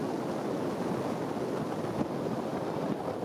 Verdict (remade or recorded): recorded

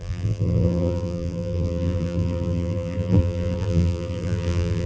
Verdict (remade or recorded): remade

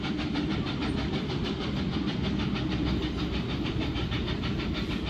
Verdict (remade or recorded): remade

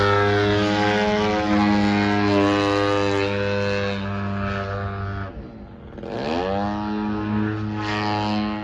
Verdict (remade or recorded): recorded